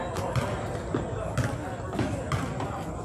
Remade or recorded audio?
recorded